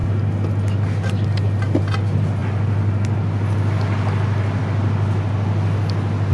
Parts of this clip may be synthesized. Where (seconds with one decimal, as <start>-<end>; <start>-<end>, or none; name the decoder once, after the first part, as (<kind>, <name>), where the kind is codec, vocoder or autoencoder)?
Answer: none